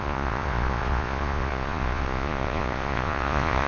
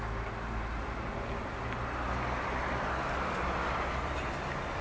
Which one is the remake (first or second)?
first